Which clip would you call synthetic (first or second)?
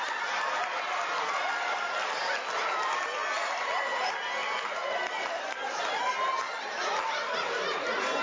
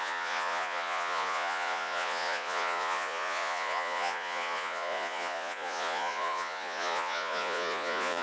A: second